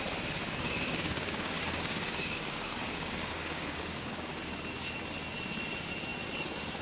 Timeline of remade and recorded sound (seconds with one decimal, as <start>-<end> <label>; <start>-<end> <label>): 0.0-0.4 recorded; 0.4-4.5 remade; 4.5-6.8 recorded